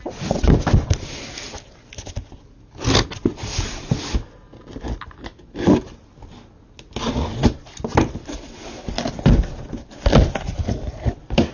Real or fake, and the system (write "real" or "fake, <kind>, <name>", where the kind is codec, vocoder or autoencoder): real